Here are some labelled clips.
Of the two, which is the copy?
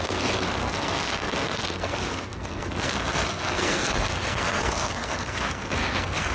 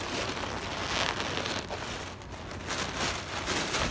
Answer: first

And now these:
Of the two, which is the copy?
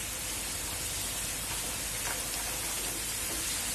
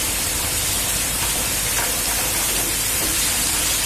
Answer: second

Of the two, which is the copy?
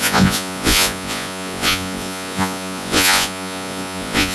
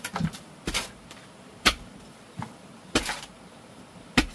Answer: first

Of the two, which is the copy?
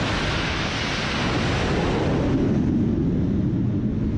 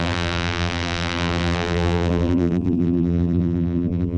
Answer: second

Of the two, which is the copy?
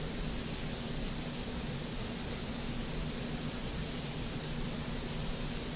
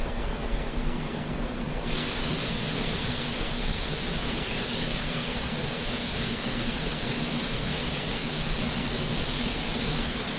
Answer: second